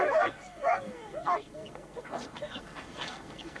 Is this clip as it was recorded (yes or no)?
no